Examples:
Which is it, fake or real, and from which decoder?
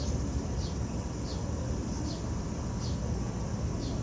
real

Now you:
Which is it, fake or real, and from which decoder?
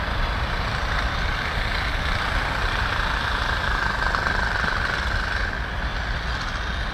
real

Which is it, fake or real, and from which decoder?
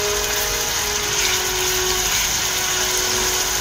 real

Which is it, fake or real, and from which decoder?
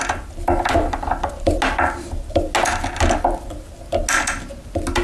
real